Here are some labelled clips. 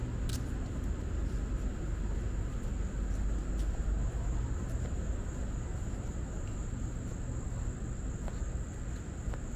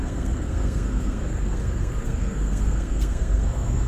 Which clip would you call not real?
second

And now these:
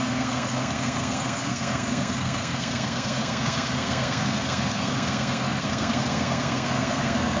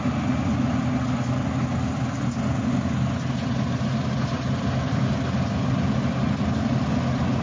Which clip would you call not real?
first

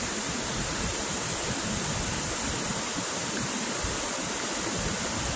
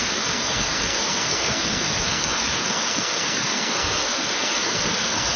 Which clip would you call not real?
second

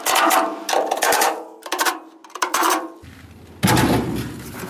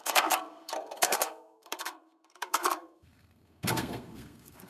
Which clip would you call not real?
second